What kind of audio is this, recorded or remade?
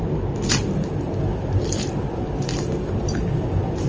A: recorded